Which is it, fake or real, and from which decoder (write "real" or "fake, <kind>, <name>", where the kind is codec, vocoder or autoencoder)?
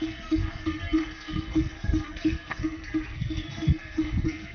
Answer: fake, codec, SNAC